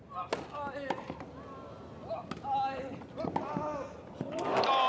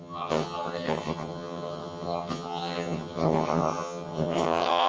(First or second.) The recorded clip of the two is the first